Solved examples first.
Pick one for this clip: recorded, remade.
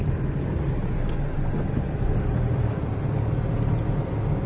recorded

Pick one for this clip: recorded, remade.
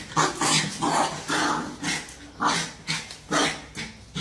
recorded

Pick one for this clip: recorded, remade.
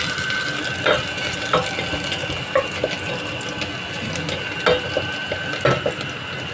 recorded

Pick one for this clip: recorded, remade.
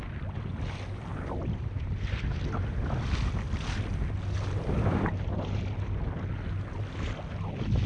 recorded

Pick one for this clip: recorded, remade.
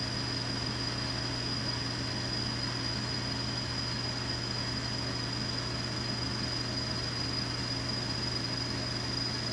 recorded